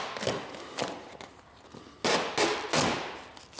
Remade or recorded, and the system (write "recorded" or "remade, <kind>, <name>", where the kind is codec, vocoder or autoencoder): recorded